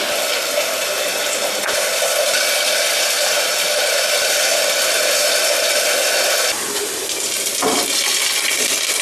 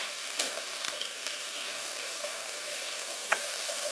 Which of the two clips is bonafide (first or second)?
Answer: first